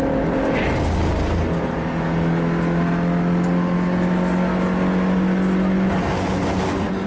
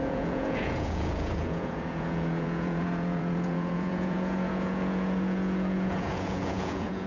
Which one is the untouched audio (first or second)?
first